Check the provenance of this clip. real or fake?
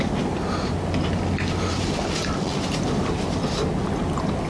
real